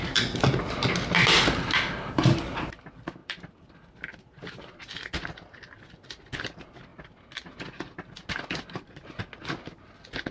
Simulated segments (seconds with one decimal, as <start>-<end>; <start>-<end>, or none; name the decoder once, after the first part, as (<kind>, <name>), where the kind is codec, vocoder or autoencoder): 3.2-3.7 (vocoder, BigVGAN v2)